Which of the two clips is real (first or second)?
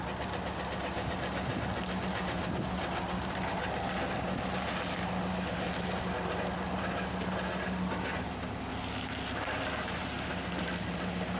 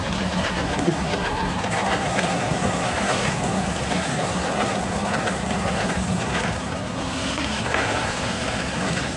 first